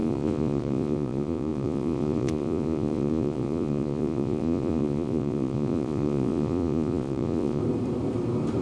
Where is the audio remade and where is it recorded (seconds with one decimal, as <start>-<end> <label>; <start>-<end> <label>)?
0.0-7.6 remade; 7.6-8.6 recorded